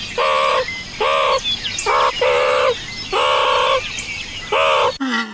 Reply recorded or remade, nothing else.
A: recorded